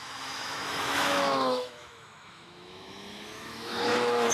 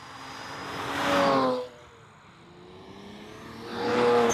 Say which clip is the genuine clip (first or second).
second